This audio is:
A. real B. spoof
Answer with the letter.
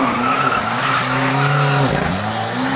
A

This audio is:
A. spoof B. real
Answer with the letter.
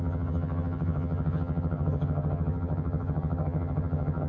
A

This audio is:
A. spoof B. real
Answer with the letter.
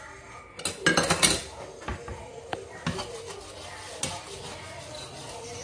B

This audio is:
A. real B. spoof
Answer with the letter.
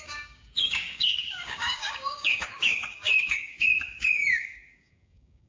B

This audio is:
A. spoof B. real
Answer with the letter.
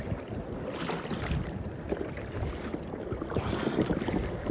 B